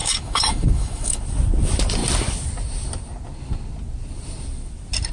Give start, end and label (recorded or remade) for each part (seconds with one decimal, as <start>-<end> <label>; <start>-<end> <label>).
0.0-1.2 remade; 1.2-5.1 recorded